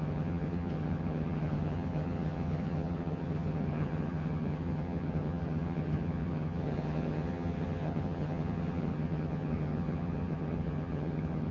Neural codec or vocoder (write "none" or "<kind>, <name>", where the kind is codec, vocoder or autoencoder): vocoder, HiFi-GAN